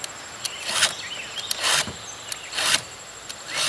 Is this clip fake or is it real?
real